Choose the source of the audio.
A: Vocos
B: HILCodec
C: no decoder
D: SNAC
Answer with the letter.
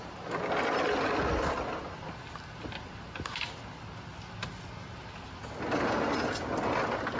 C